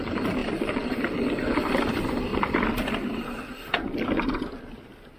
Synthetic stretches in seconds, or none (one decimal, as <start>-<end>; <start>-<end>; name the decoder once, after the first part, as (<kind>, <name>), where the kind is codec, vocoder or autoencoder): 0.4-1.1 (vocoder, BigVGAN v2); 2.3-4.6